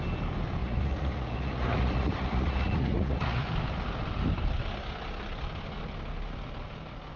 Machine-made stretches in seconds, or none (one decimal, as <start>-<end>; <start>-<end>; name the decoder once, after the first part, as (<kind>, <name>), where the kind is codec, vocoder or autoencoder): 0.6-3.5 (vocoder, Vocos)